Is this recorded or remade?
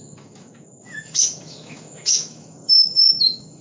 remade